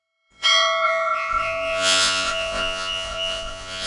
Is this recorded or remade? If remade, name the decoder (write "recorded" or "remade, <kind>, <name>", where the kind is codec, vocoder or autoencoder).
remade, vocoder, Vocos